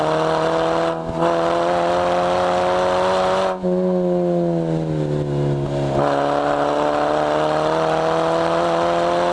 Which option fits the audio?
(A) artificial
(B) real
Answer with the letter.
B